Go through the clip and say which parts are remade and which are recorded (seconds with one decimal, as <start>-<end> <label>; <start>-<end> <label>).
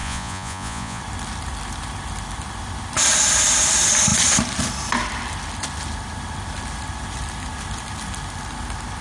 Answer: 0.0-1.0 remade; 1.0-9.0 recorded